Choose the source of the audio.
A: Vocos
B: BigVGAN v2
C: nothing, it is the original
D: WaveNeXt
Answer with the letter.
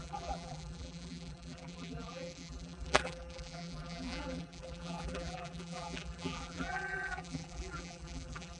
B